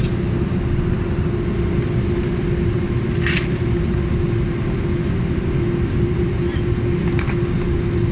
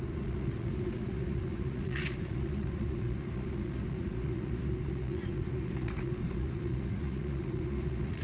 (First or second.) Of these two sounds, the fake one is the second